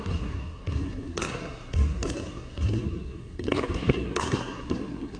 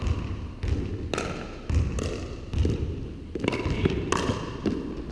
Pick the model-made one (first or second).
first